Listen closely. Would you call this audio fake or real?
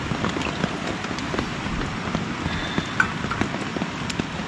real